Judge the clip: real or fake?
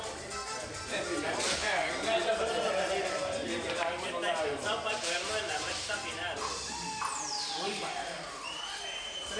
fake